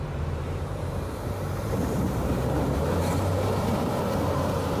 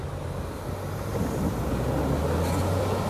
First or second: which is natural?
second